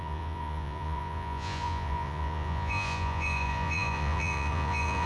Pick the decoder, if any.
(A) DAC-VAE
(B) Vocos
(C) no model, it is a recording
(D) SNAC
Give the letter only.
B